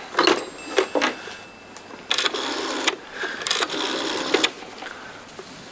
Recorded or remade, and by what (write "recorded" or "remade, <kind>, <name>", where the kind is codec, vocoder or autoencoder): recorded